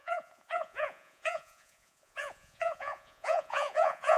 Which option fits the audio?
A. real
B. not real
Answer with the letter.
B